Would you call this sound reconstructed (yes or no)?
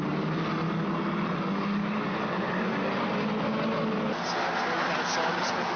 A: no